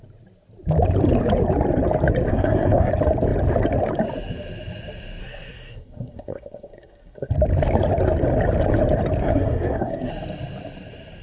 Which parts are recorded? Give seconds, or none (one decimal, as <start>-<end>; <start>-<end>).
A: 0.0-2.3; 2.9-5.2; 7.3-9.2; 10.1-11.2